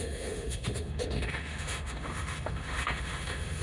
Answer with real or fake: fake